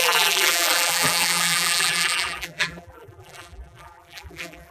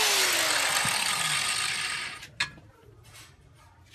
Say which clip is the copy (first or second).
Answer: first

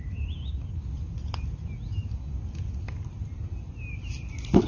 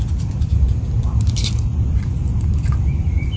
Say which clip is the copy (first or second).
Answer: second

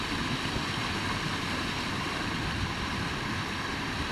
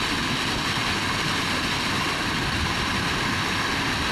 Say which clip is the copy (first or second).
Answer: first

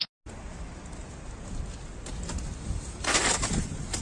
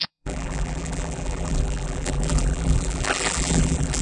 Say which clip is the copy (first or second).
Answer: second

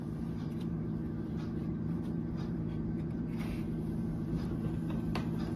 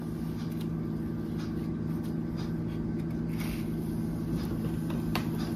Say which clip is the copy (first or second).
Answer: first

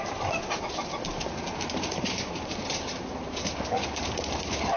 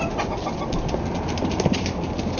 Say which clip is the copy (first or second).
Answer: first